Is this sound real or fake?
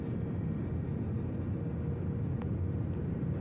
real